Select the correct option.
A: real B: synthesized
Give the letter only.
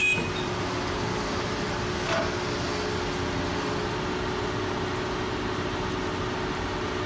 A